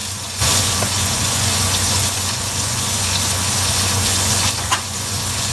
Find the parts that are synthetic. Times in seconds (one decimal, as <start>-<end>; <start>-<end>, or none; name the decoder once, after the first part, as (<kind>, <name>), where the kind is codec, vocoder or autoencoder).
0.0-5.5 (vocoder, Vocos)